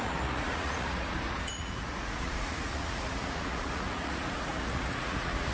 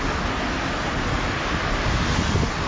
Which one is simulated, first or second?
first